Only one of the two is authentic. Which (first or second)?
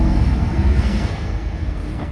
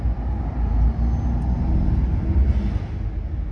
second